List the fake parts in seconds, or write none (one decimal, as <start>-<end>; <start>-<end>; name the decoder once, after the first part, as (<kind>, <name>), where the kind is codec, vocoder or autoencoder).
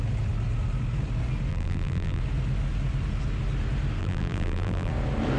1.5-2.2 (vocoder, BigVGAN v2); 4.0-4.9